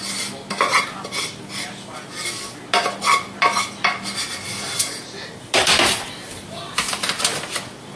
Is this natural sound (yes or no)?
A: yes